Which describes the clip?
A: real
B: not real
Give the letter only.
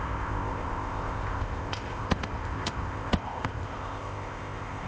B